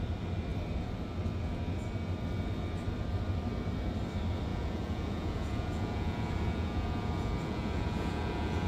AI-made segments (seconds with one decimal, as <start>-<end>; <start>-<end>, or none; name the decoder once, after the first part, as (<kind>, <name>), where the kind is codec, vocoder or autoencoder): 4.5-8.7 (vocoder, Vocos)